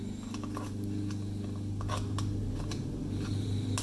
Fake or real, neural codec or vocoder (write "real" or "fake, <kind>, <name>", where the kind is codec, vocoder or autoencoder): real